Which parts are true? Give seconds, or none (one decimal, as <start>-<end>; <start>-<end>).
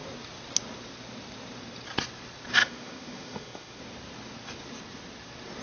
0.0-2.6; 3.8-5.6